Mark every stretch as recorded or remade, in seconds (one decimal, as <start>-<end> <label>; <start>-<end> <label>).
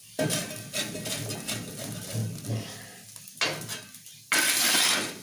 0.0-5.2 recorded